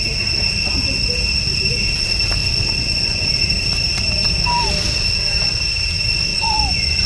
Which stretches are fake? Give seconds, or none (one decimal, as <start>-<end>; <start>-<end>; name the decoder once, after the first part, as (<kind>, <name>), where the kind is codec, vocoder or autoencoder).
2.4-3.4 (vocoder, Vocos); 6.3-7.1